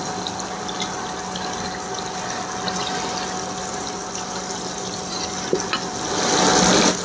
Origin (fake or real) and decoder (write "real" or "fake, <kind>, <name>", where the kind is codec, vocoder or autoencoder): real